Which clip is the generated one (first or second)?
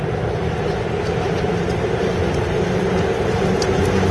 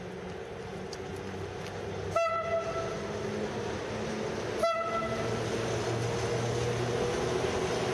first